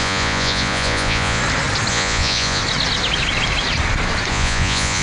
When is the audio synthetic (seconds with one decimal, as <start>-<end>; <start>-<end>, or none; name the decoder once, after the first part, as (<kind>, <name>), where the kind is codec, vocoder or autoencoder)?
0.0-1.4 (vocoder, Vocos); 1.9-2.6; 4.3-5.0